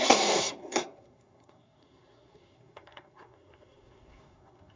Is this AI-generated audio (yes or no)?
yes